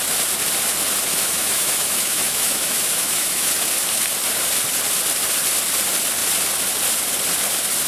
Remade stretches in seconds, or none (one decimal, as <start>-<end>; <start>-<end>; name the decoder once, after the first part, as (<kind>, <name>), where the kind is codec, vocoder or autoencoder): 1.1-3.5 (autoencoder, DAC-VAE)